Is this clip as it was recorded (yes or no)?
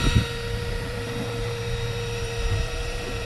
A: no